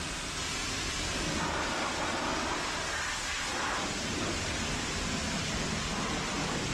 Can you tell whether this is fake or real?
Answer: real